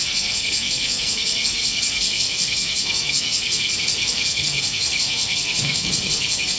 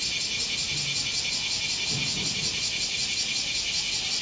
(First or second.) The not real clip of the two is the first